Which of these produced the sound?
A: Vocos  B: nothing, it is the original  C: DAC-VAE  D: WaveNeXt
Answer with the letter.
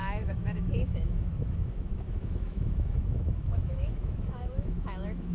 C